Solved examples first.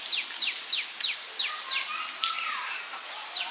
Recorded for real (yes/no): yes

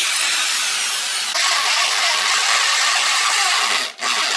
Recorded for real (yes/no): yes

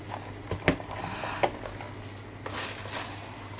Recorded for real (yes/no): yes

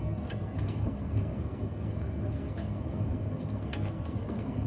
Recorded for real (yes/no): no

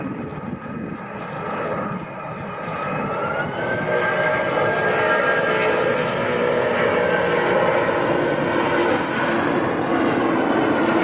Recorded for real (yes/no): yes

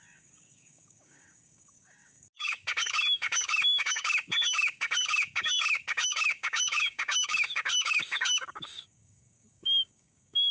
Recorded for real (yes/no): no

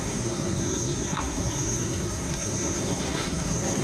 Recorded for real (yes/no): no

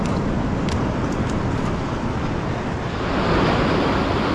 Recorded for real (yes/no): yes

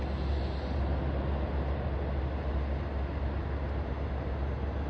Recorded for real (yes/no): yes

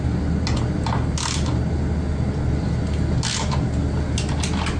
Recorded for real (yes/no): yes